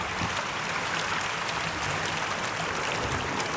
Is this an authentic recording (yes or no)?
yes